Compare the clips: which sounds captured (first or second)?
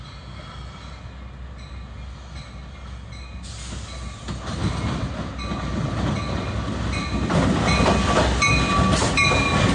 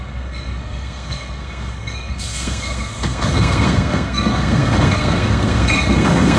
first